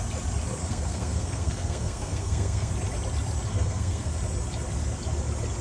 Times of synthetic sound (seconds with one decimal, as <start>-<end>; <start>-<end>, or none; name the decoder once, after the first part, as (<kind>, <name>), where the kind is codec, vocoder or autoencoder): 0.6-2.7 (codec, SNAC); 3.5-4.1